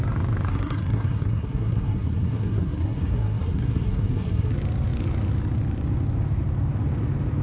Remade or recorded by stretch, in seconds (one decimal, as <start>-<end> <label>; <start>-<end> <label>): 0.0-0.5 recorded; 0.5-4.5 remade; 4.5-7.4 recorded